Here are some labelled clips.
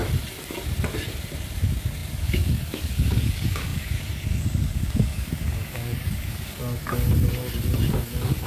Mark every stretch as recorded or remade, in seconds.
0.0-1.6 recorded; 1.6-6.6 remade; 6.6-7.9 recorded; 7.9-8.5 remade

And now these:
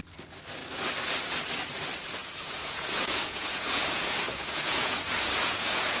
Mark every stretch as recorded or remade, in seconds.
0.0-2.2 recorded; 2.2-6.0 remade

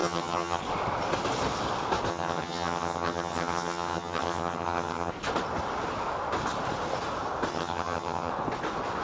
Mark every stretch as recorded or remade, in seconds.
0.0-0.6 remade; 0.6-2.1 recorded; 2.1-5.1 remade; 5.1-7.5 recorded; 7.5-8.3 remade; 8.3-9.0 recorded

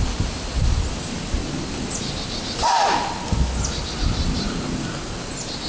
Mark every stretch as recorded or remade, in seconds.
0.0-5.7 recorded

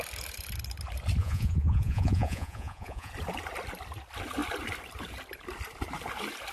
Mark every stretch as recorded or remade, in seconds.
0.0-1.2 recorded; 1.2-3.1 remade; 3.1-6.5 recorded

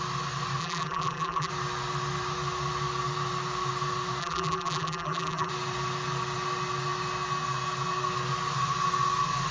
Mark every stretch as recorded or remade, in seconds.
0.0-0.6 recorded; 0.6-1.5 remade; 1.5-4.2 recorded; 4.2-5.5 remade; 5.5-9.5 recorded

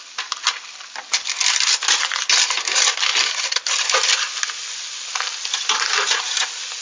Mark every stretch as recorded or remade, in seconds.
0.0-6.8 recorded